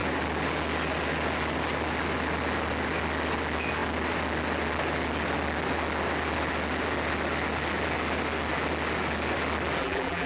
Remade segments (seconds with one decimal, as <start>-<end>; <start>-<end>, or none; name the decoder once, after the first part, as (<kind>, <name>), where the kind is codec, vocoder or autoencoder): 9.8-10.3 (vocoder, BigVGAN v2)